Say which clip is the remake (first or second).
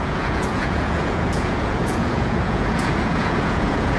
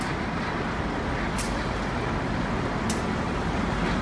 first